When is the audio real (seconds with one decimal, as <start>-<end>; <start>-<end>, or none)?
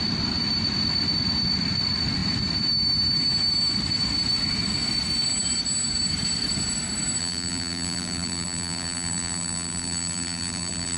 0.0-7.2